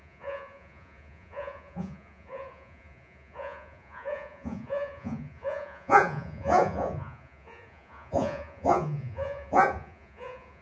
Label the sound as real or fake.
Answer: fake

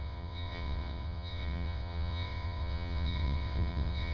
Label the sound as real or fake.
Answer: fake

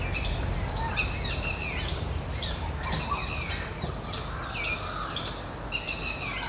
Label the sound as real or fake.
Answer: real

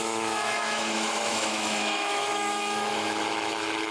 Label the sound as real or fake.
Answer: fake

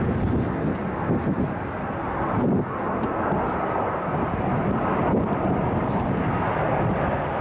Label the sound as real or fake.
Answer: real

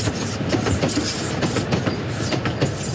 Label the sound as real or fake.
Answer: real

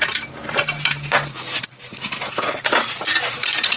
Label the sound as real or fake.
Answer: real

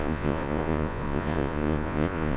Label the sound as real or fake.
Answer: fake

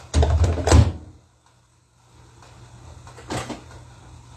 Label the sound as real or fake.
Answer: real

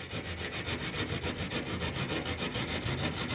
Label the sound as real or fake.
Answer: real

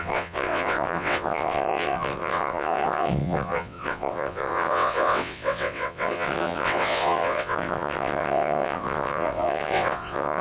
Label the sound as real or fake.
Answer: fake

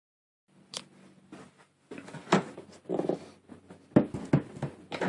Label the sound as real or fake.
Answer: real